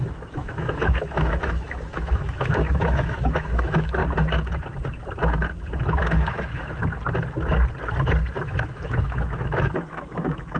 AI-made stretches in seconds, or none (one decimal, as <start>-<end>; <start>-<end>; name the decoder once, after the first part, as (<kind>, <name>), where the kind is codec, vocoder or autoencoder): 0.0-4.0 (autoencoder, DAC-VAE); 5.9-6.8; 8.4-10.6

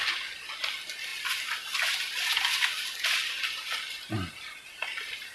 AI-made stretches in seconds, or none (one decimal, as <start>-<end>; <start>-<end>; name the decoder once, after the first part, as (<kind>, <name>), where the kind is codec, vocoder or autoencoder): none

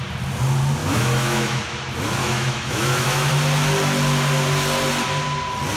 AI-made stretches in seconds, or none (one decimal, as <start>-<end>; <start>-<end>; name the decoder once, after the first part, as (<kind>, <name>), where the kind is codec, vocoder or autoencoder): 0.8-1.6 (autoencoder, DAC-VAE); 2.2-3.3

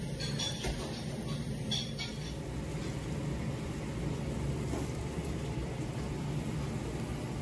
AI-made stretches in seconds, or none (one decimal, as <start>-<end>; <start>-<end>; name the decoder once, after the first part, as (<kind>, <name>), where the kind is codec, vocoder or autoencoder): none